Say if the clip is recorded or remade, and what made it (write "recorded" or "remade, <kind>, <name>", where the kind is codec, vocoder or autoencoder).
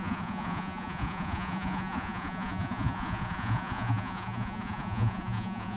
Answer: remade, vocoder, Vocos